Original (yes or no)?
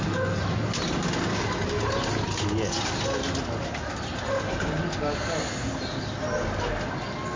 yes